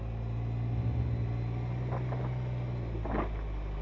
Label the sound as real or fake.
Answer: real